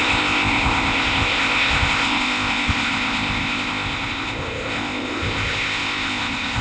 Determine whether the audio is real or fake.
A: fake